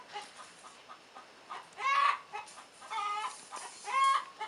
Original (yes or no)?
yes